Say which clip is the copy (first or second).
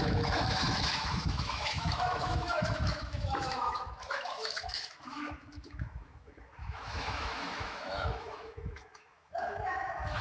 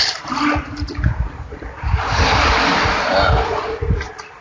first